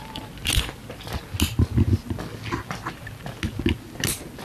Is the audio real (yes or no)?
yes